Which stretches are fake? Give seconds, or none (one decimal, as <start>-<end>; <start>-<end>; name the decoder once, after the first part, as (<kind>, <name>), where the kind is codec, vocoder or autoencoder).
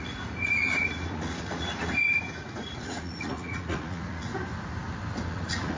0.0-4.3 (vocoder, Vocos); 5.3-5.8